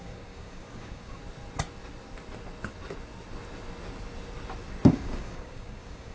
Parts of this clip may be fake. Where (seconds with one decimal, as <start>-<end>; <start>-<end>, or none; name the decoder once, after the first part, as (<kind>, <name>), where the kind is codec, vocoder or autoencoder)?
0.0-1.2 (codec, DAC); 4.9-6.1

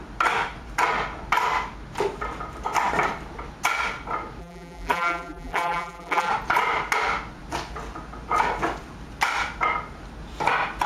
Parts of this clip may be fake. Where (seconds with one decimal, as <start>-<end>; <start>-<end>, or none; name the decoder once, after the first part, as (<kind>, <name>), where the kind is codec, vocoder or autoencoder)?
4.4-6.3 (vocoder, BigVGAN v2)

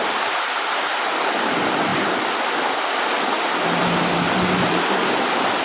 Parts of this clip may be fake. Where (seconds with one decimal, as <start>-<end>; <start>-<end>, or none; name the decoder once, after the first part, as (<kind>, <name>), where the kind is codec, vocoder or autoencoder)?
none

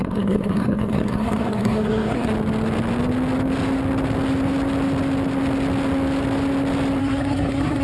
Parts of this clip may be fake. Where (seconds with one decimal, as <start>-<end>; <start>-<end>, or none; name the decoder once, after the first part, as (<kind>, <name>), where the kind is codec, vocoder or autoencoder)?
0.0-2.3 (codec, SNAC); 7.0-7.8

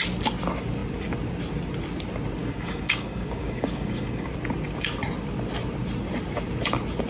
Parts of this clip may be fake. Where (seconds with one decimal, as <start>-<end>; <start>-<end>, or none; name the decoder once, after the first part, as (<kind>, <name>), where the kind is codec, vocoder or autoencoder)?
2.4-4.3 (codec, DAC)